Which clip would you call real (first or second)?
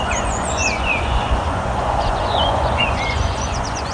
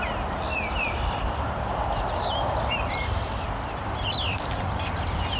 second